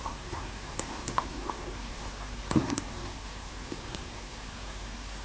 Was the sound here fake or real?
fake